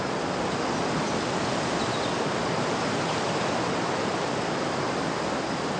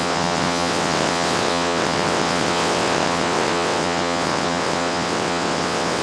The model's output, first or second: second